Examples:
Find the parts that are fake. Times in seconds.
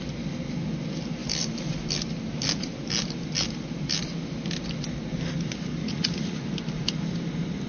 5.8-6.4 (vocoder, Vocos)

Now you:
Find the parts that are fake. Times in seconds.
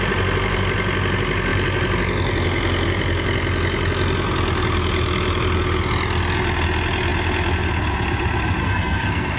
8.6-9.4 (codec, SNAC)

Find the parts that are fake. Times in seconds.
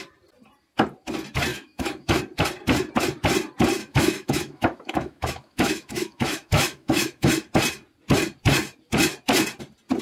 1.5-2.2 (autoencoder, DAC-VAE); 3.8-7.3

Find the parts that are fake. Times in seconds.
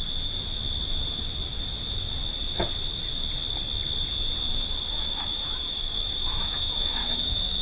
4.5-7.6 (autoencoder, DAC-VAE)